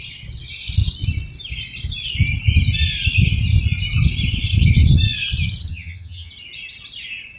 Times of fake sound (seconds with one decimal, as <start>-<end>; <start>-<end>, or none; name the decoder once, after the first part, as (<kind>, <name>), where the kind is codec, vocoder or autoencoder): 5.7-6.3 (vocoder, HiFi-GAN)